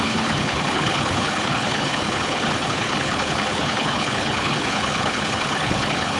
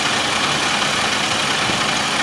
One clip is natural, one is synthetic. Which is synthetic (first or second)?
first